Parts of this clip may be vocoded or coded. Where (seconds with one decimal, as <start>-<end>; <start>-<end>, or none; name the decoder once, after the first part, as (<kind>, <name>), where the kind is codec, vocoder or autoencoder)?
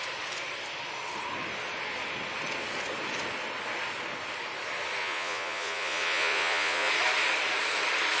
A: 5.0-6.9 (vocoder, Vocos)